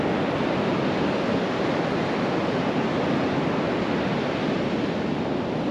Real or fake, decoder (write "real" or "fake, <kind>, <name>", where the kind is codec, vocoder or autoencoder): real